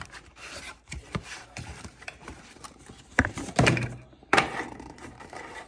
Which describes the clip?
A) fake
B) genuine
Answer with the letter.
A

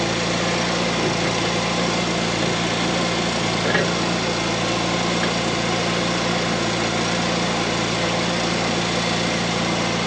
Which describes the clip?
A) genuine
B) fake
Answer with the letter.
A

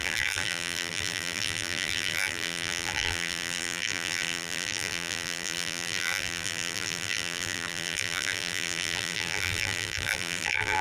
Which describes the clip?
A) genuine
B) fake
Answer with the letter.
B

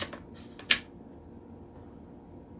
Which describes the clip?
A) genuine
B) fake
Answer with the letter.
A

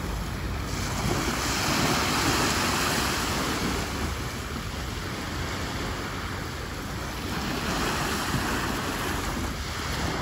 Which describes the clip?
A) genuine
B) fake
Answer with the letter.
A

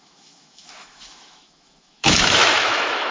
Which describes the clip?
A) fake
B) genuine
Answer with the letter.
A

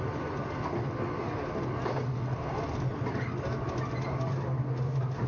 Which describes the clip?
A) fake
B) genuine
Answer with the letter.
B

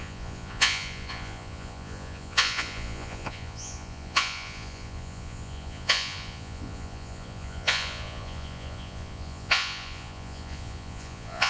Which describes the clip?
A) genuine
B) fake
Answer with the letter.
B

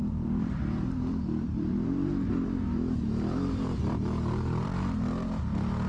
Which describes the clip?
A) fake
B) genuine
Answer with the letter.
A